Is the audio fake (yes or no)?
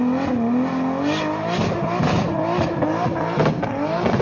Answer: no